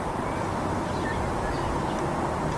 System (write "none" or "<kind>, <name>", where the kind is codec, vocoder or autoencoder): none